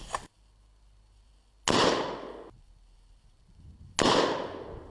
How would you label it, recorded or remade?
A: recorded